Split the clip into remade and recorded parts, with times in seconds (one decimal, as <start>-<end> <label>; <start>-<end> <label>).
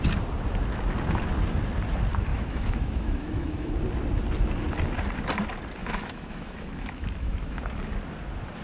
0.0-2.3 recorded; 2.3-3.7 remade; 3.7-5.8 recorded; 5.8-7.6 remade; 7.6-8.6 recorded